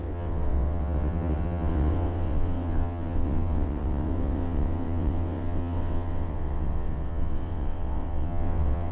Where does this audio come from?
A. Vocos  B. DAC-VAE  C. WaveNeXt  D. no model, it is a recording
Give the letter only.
C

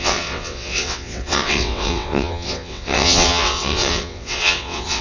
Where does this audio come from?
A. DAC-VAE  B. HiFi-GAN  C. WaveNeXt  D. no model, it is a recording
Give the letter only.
C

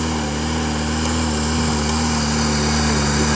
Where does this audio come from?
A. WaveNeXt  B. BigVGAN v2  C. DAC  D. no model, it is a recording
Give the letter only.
D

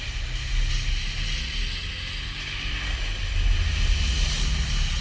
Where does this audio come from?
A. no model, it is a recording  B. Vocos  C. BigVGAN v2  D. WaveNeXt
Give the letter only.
A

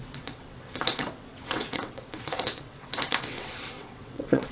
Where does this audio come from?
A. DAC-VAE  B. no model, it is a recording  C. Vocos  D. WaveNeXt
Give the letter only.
D